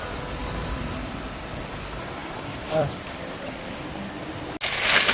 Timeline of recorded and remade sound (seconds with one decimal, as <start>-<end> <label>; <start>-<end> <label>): 0.0-0.4 recorded; 0.4-1.7 remade; 1.7-2.2 recorded; 2.2-4.1 remade; 4.1-5.1 recorded